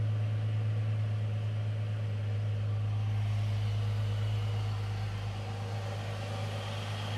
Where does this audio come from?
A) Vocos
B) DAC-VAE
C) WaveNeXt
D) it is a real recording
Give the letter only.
D